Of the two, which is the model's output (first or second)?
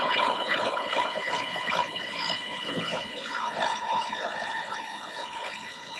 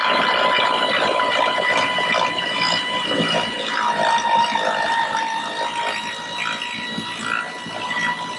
first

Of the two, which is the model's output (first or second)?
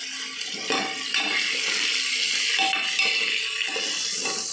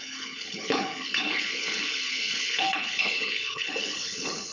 second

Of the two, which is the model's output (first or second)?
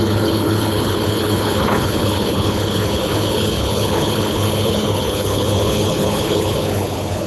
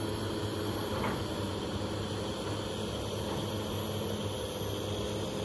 first